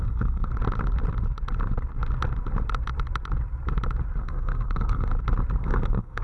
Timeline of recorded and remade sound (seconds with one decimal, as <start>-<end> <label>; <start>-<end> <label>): 0.0-0.5 remade; 0.5-4.2 recorded; 4.2-5.1 remade; 5.1-5.6 recorded; 5.6-6.2 remade